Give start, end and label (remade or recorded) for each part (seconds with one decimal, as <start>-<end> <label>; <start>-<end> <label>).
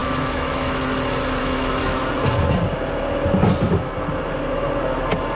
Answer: 0.0-0.8 remade; 0.8-1.4 recorded; 1.4-2.1 remade; 2.1-5.4 recorded